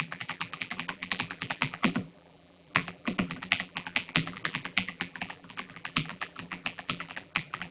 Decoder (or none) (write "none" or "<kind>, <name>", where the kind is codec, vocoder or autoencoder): vocoder, BigVGAN v2